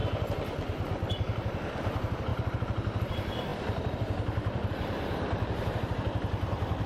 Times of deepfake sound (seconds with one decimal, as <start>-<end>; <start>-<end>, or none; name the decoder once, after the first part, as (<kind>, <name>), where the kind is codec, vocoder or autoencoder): 1.1-2.3 (vocoder, BigVGAN v2); 3.0-6.9